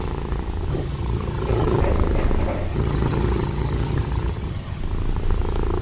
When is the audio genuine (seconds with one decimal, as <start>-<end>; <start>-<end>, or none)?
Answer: 0.0-0.7; 1.8-2.7; 4.8-5.8